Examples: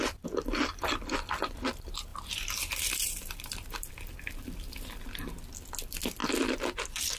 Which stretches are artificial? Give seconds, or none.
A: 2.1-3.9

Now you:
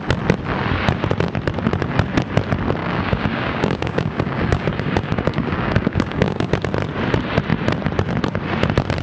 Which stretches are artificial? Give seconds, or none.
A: 2.8-6.5

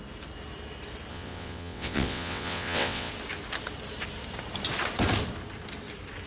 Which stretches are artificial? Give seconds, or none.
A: 1.1-3.1